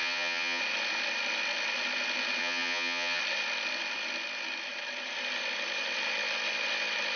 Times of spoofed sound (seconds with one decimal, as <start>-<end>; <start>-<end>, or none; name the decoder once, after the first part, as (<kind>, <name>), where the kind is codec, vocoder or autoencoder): 0.0-0.6 (vocoder, HiFi-GAN); 2.4-3.2